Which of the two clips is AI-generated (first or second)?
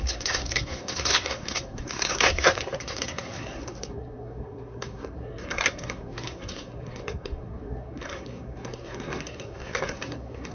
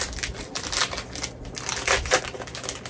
first